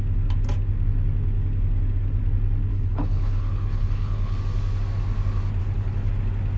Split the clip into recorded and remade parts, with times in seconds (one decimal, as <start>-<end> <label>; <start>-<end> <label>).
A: 0.0-2.7 recorded; 2.7-4.4 remade; 4.4-5.6 recorded; 5.6-6.1 remade; 6.1-6.6 recorded